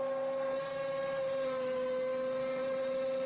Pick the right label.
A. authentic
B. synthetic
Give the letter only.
A